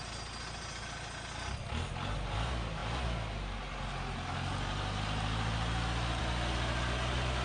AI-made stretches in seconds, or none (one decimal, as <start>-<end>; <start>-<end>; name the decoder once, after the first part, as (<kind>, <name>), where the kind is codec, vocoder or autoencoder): none

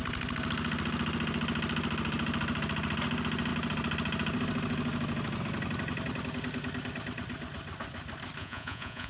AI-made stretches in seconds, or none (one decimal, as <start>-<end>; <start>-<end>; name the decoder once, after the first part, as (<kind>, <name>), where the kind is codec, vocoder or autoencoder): 8.4-9.1 (vocoder, Vocos)

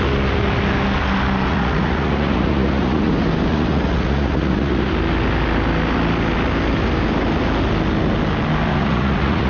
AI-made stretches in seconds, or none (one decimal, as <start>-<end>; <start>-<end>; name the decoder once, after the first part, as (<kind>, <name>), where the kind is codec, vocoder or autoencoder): 1.5-3.1 (vocoder, Vocos); 3.5-4.9; 8.7-9.5

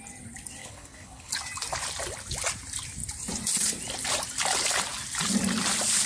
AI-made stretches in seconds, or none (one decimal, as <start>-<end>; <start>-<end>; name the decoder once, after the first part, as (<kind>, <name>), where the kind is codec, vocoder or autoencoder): 0.6-1.3 (codec, HILCodec)

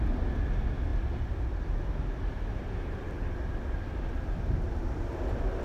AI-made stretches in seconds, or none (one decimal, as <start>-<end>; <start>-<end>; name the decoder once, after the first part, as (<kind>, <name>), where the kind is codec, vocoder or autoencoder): none